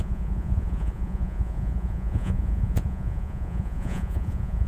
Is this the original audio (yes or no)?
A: no